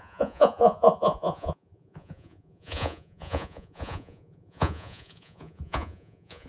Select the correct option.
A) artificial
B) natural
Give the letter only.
A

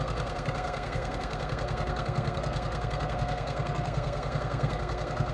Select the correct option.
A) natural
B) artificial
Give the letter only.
B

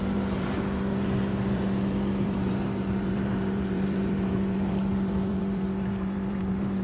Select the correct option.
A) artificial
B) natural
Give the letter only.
A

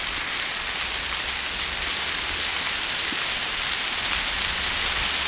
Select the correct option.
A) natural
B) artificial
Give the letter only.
A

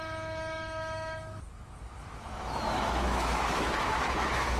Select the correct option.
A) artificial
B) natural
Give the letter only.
A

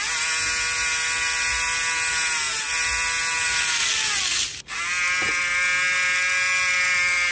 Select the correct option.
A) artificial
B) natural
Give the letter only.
B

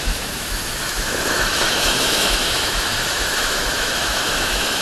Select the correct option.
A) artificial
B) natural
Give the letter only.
A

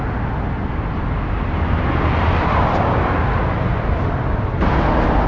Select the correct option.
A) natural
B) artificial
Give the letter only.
A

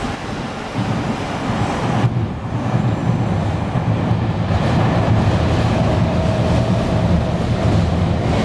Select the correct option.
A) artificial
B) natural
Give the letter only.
B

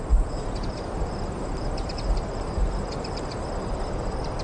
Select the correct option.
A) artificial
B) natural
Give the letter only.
A